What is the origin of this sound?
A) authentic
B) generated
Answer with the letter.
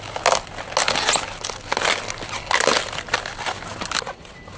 A